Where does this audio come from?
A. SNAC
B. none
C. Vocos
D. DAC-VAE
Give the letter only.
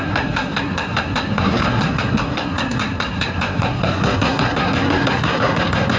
A